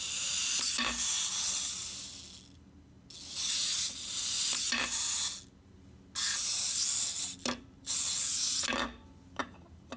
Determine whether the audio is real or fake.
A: real